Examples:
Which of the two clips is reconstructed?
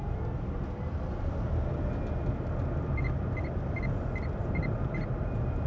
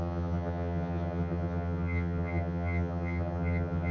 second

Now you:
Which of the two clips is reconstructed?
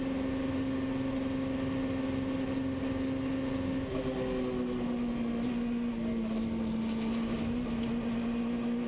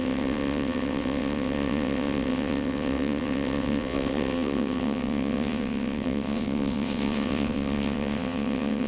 second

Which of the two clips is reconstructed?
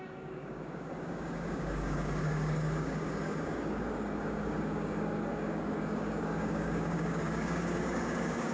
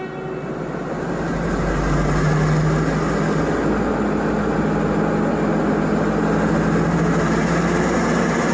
first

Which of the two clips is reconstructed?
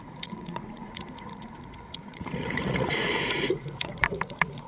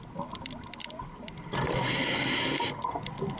first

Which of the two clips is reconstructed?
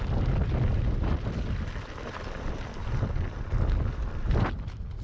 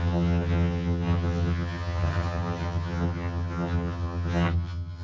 second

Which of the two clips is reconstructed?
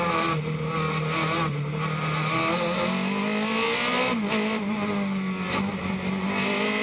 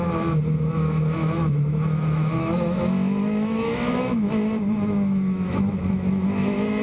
second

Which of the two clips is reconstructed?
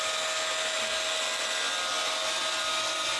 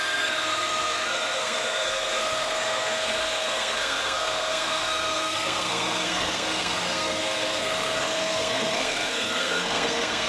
second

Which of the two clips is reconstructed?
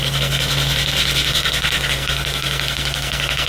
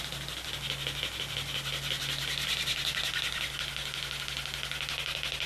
first